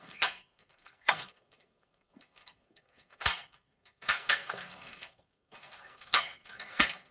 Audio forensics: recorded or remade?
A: remade